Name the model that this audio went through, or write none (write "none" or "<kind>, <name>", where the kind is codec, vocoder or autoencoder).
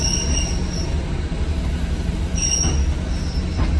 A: none